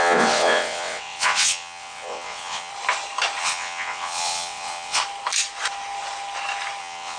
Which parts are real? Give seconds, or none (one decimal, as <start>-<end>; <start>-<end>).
2.7-3.4; 5.0-6.8